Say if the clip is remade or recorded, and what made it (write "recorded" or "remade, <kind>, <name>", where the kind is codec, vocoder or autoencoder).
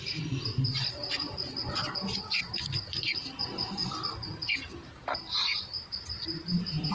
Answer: remade, vocoder, BigVGAN v2